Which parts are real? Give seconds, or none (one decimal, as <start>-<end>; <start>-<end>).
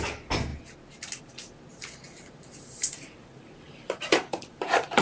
0.0-1.7